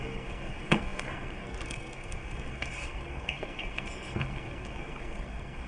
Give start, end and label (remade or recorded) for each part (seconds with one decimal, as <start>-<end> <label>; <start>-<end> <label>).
0.0-5.7 remade